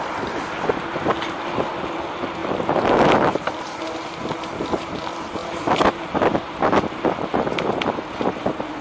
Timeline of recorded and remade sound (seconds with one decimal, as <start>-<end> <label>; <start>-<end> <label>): 0.0-8.8 recorded